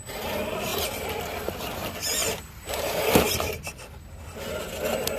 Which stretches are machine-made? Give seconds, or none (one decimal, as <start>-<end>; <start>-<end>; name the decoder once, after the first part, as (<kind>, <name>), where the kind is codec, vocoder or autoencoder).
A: 2.2-4.8 (vocoder, BigVGAN v2)